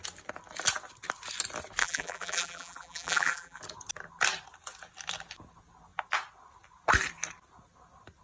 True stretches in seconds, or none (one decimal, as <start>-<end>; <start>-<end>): 0.0-1.8; 3.6-8.2